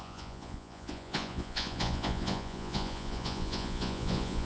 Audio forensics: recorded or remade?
remade